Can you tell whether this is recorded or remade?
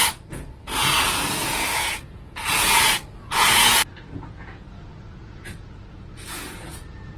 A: remade